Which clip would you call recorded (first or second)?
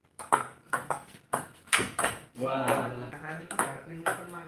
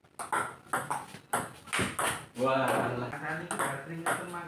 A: second